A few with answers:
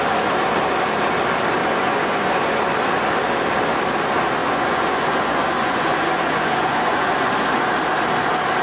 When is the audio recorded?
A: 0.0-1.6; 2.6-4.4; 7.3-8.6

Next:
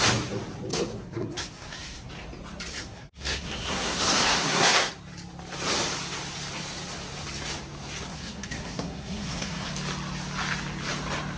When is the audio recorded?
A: 0.0-0.7; 2.1-2.7; 4.9-8.1; 9.7-11.4

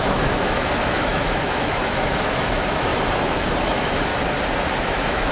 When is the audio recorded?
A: 2.9-3.6; 4.1-4.8

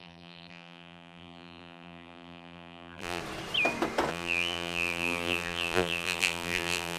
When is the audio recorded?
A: 3.2-4.1